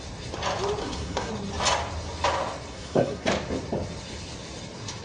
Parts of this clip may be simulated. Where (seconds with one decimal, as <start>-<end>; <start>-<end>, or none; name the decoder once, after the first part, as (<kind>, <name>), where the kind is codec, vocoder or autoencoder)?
0.8-1.3 (codec, SNAC); 2.7-3.3